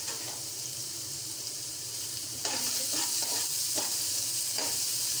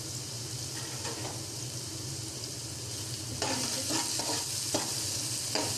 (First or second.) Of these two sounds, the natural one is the second